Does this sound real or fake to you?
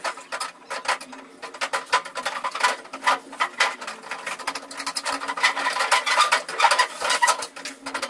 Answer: real